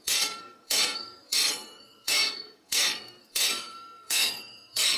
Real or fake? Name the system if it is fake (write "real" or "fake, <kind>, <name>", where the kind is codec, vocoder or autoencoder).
fake, codec, SNAC